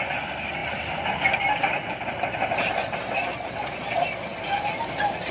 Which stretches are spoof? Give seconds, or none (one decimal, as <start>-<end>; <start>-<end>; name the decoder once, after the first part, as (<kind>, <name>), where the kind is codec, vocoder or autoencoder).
none